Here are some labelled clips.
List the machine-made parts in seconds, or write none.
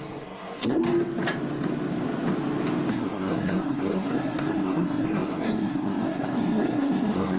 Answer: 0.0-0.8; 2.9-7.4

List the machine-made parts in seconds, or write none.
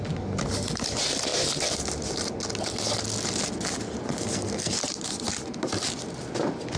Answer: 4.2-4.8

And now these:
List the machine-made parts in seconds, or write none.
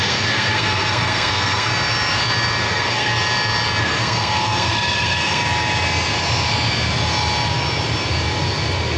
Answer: 0.0-1.7; 2.7-3.1; 3.8-5.4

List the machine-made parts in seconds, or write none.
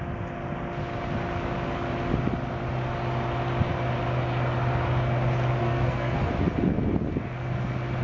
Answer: 5.6-6.3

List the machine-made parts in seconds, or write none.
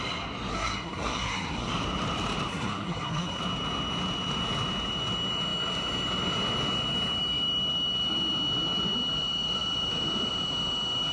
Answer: 0.5-1.7; 2.5-3.4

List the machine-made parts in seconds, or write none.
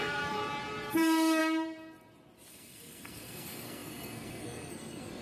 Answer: 0.0-0.4; 0.9-1.4; 2.5-5.2